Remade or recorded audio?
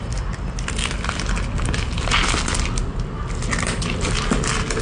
recorded